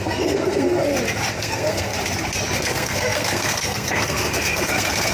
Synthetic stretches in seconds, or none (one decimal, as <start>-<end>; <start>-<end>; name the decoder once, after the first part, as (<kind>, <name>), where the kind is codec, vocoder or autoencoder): 0.0-0.8 (codec, SNAC); 1.3-1.9; 2.6-5.1

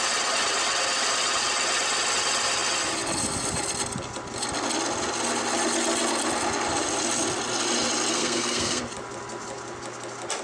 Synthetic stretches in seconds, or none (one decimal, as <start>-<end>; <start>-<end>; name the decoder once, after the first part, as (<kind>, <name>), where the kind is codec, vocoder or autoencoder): 8.1-8.8 (codec, SNAC)

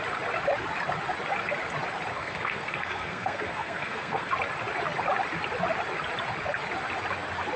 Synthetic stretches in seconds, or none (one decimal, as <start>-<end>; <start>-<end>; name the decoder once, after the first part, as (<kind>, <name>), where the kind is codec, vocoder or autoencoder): 2.1-4.3 (codec, SNAC)

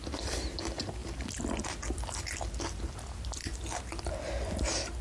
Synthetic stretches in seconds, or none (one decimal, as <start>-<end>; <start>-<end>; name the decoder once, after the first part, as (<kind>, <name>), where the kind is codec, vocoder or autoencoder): none

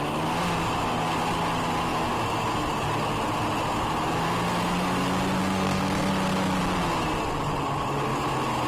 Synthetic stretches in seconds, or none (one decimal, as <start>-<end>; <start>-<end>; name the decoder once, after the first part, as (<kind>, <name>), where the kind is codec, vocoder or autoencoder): 5.4-6.1 (codec, SNAC)

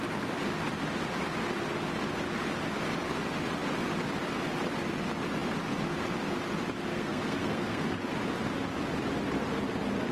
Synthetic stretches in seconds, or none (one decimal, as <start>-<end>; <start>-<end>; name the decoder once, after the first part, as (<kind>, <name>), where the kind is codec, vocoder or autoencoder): 6.9-7.9 (codec, SNAC)